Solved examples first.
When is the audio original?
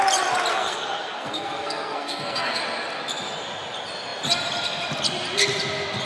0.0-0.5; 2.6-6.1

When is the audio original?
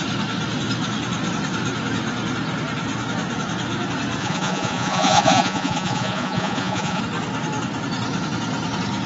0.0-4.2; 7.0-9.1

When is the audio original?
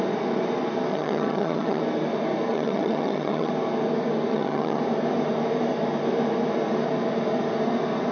0.0-0.9; 1.8-2.5; 3.5-4.3; 4.8-8.1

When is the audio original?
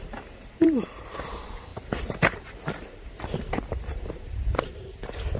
none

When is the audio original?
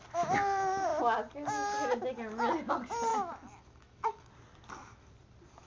0.0-3.1; 4.3-5.7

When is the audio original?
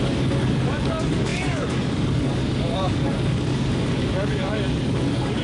none